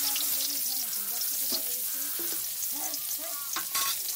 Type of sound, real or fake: real